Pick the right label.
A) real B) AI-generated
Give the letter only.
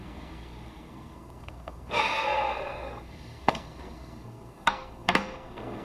B